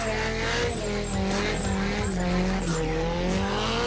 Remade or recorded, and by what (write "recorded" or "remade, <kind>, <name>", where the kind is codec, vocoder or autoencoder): recorded